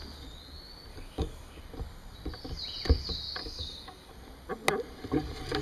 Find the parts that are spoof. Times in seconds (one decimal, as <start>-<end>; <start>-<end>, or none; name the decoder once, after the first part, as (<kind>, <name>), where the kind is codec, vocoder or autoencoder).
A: 0.9-1.6 (codec, DAC); 3.4-4.1